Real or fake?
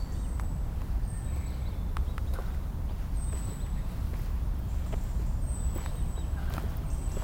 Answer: real